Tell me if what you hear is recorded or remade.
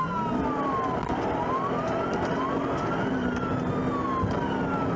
recorded